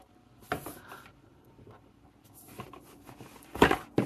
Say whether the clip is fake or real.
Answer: fake